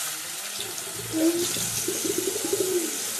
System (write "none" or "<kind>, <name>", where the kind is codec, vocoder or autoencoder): none